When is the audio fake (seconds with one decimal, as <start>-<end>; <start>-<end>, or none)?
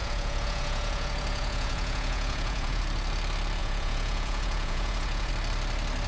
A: 0.0-2.8; 3.6-5.3